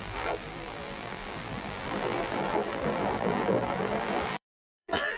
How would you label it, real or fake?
fake